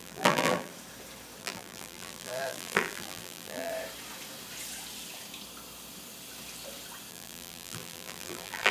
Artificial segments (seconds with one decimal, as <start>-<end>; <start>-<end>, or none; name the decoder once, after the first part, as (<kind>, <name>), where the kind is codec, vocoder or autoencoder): 0.0-0.7 (vocoder, BigVGAN v2); 1.4-3.7; 7.1-8.7